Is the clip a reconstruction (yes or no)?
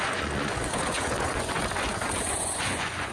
yes